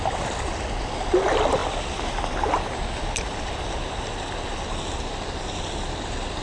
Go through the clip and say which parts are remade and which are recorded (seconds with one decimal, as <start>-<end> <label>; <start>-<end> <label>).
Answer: 0.0-6.4 recorded